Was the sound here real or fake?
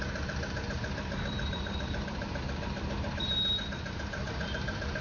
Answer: fake